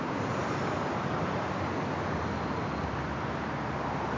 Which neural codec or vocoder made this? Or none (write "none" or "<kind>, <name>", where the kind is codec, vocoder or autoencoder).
none